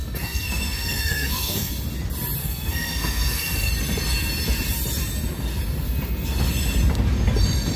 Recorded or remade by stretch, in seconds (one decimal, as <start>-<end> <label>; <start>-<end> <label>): 0.0-1.7 remade; 1.7-2.4 recorded; 2.4-3.7 remade; 3.7-7.8 recorded